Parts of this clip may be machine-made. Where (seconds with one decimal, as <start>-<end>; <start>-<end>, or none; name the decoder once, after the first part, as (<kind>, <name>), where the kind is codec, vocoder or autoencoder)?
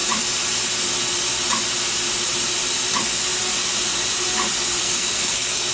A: 4.8-5.7 (codec, SNAC)